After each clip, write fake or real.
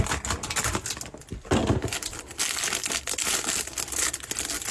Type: real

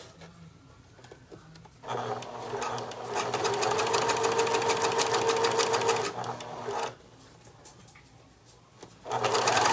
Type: real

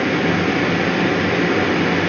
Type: real